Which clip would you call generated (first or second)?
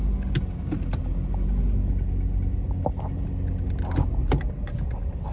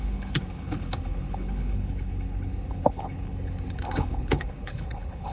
second